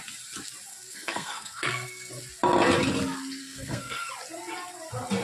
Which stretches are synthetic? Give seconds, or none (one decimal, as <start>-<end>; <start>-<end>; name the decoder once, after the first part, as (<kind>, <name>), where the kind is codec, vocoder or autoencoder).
0.7-2.1 (codec, SNAC); 3.4-4.1